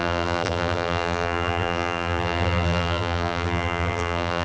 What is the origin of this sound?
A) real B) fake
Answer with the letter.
B